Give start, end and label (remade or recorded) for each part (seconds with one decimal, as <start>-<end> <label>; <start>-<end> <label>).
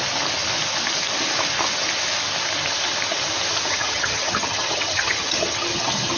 0.0-3.7 recorded; 3.7-6.2 remade